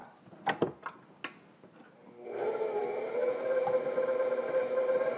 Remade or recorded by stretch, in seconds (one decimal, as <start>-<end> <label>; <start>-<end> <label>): 0.0-5.2 recorded